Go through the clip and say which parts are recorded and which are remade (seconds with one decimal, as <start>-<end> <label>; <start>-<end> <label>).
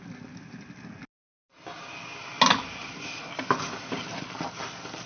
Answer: 0.0-5.1 recorded